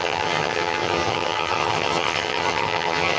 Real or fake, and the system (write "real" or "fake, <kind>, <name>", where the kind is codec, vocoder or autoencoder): fake, vocoder, HiFi-GAN